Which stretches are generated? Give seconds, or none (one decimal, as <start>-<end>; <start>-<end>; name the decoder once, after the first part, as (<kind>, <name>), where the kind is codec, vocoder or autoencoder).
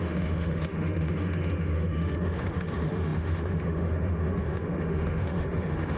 0.0-6.0 (autoencoder, DAC-VAE)